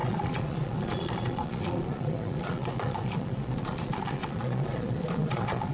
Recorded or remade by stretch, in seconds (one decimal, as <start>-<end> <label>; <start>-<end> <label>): 0.0-5.7 remade